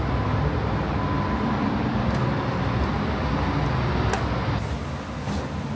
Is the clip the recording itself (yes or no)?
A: yes